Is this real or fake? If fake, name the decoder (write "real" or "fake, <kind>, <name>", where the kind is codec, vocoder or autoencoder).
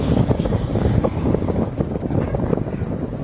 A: fake, codec, DAC